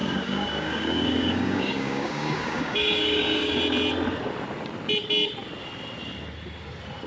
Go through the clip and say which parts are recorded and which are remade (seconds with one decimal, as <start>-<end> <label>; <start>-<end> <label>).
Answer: 0.0-3.6 remade; 3.6-7.1 recorded